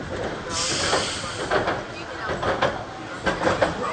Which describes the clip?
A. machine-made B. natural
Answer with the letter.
B